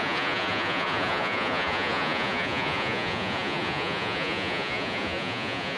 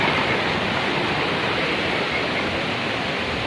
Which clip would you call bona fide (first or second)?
second